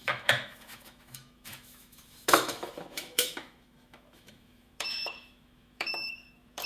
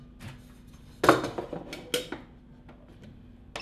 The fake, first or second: first